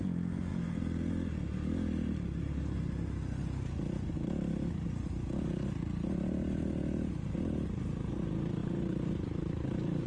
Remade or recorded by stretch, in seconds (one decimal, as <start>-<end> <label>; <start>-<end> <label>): 0.0-0.5 recorded; 0.5-1.1 remade; 1.1-8.6 recorded; 8.6-10.1 remade